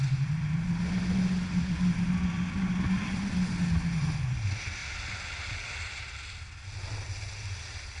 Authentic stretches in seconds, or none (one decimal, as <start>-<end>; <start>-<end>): 0.0-8.0